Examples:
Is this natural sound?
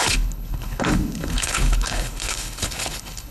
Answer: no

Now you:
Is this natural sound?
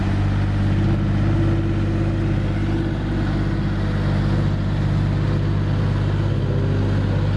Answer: yes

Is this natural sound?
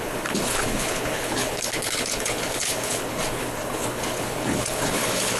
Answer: no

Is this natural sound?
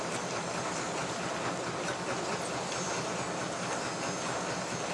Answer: yes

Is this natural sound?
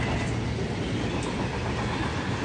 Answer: yes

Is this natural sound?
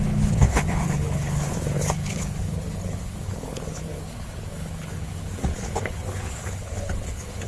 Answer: no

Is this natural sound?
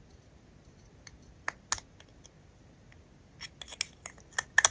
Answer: yes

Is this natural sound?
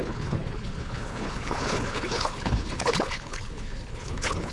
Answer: no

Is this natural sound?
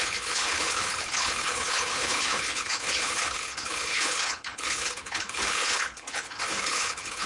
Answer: no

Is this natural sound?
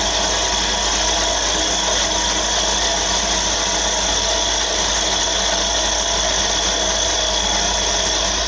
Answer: yes